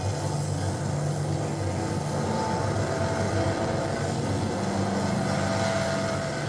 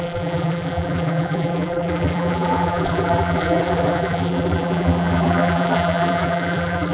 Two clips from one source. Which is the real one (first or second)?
first